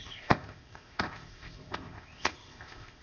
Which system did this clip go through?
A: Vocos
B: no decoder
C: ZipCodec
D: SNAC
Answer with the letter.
C